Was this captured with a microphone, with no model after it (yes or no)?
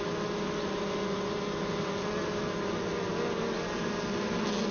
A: yes